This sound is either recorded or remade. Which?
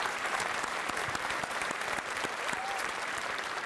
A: remade